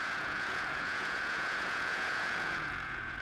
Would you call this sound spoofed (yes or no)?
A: yes